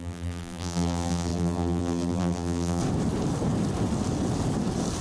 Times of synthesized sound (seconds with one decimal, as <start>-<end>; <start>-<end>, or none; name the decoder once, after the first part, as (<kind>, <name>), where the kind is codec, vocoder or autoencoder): 0.0-2.8 (vocoder, BigVGAN v2)